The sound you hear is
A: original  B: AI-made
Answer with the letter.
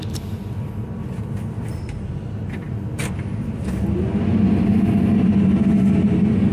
A